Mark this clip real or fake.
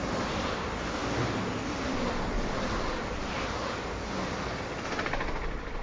real